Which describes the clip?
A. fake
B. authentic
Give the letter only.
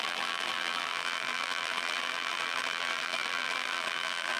A